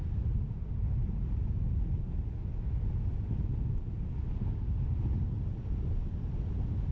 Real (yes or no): yes